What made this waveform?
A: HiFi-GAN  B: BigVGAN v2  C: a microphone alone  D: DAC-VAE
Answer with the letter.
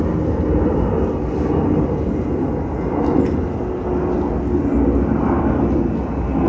C